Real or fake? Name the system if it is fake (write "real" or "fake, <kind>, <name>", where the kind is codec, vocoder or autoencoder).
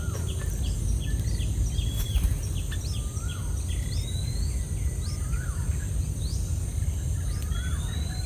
real